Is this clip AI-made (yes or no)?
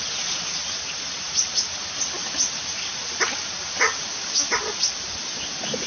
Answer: no